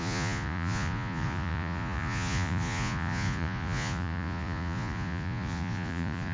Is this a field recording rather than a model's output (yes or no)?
no